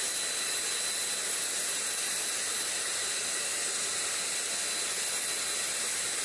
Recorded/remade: recorded